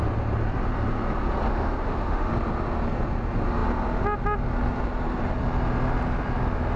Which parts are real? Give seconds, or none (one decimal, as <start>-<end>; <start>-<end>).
0.0-1.5; 2.3-6.8